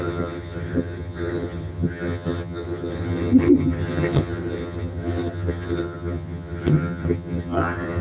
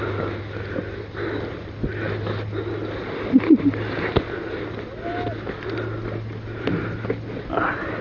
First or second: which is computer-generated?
first